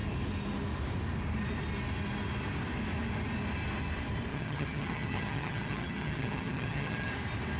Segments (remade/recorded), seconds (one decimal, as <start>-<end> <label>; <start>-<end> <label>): 0.0-4.3 recorded; 4.3-7.1 remade; 7.1-7.6 recorded